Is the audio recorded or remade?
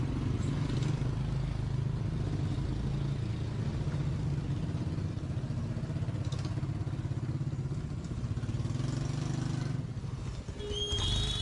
recorded